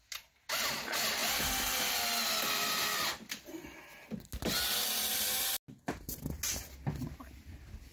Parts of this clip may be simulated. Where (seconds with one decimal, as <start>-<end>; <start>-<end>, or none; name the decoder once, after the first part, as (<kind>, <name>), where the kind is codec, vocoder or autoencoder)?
none